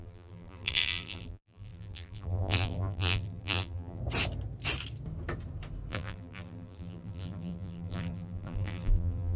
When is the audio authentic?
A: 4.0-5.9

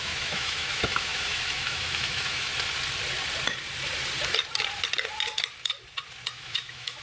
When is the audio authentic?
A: 2.5-6.3

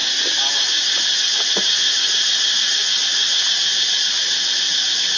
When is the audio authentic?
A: 0.0-5.2

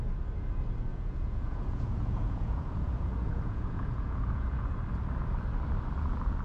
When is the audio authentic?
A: 0.0-0.9; 4.7-6.4

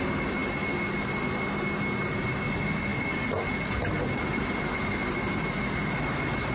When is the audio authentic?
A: 0.0-6.5

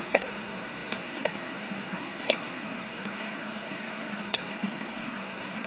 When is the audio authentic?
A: none